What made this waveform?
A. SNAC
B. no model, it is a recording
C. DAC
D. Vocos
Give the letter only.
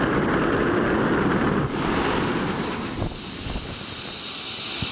B